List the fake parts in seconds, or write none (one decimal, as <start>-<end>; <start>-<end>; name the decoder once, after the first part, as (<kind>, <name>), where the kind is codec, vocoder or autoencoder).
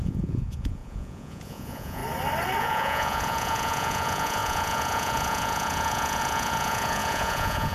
0.0-2.0 (vocoder, Vocos); 2.6-7.7